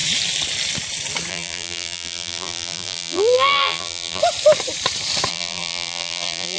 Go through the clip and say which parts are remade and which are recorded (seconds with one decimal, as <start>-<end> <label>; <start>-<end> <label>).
0.0-1.3 recorded; 1.3-4.2 remade; 4.2-5.3 recorded; 5.3-6.6 remade